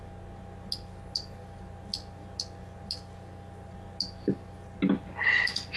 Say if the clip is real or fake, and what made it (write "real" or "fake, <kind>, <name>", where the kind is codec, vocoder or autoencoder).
real